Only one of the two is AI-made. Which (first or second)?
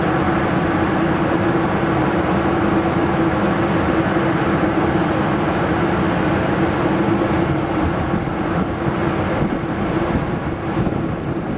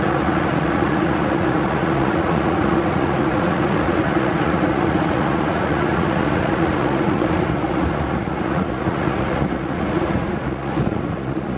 second